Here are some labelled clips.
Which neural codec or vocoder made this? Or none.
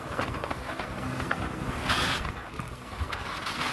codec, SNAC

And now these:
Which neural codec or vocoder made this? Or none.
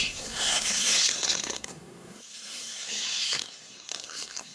codec, SNAC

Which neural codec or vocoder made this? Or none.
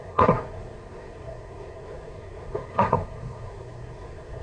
codec, SNAC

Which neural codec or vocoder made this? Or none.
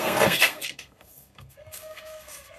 codec, SNAC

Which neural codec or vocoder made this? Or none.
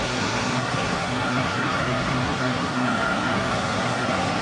codec, SNAC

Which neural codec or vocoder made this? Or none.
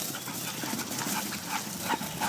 none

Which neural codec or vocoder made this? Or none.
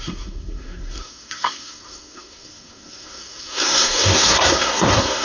codec, SNAC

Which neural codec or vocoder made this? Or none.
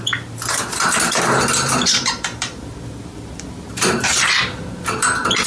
none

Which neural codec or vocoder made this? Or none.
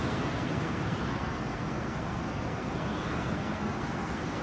codec, SNAC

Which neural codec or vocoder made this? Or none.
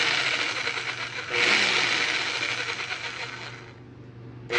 none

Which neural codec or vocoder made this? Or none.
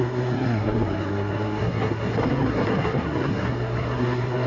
codec, SNAC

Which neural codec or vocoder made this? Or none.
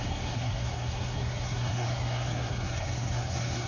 codec, SNAC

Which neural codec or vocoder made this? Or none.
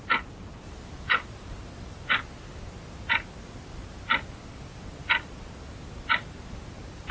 none